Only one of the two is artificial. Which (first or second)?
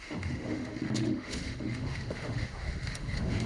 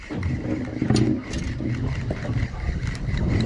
first